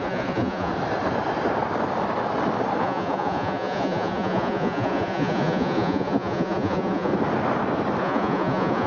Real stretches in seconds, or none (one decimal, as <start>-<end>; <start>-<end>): 0.7-2.8; 7.1-8.0